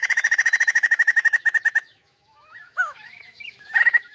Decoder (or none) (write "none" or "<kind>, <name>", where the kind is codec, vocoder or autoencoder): autoencoder, DAC-VAE